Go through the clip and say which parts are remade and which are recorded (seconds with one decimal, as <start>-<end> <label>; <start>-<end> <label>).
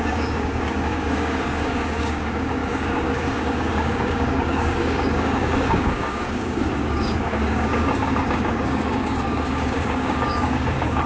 0.0-11.1 remade